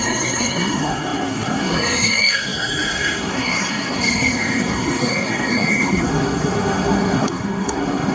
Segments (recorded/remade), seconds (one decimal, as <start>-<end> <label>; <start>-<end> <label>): 0.0-8.1 remade